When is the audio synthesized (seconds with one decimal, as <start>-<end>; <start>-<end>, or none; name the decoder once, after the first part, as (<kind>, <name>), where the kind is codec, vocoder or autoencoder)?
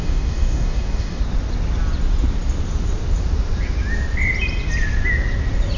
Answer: 0.0-1.2 (codec, DAC)